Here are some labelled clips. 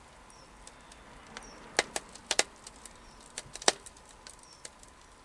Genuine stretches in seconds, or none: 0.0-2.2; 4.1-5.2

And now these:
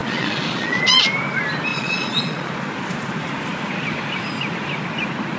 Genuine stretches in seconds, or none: 1.0-1.7; 2.5-5.4

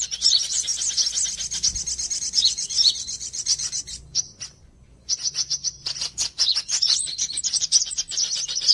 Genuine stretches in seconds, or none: 0.7-2.2

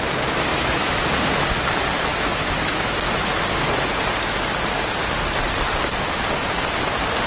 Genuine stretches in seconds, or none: 0.0-0.5; 1.0-2.1; 3.3-7.3

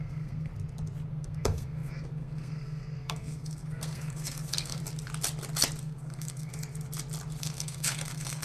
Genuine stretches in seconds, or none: 0.5-1.1; 4.8-5.8; 6.5-7.4

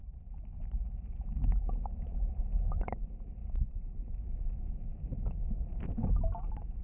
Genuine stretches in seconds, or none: 0.0-3.4; 4.2-6.8

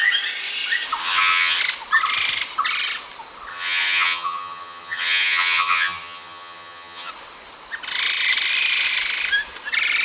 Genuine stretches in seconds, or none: 0.0-1.0; 1.6-3.5; 7.1-10.0

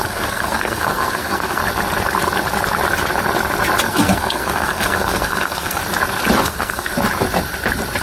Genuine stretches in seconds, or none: 1.6-3.8; 5.8-6.4; 6.9-8.0